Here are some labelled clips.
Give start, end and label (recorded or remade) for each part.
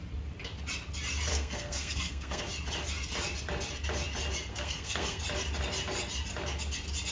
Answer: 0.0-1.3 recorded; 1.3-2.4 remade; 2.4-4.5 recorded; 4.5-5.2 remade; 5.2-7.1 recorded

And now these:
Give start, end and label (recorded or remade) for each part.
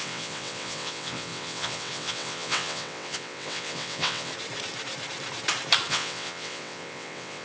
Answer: 0.0-4.3 remade; 4.3-5.9 recorded; 5.9-7.4 remade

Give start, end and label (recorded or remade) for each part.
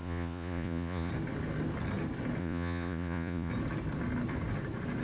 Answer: 0.0-1.1 remade; 1.1-2.4 recorded; 2.4-3.5 remade; 3.5-5.0 recorded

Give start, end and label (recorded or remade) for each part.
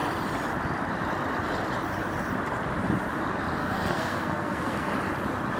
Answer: 0.0-3.6 recorded; 3.6-4.9 remade; 4.9-5.6 recorded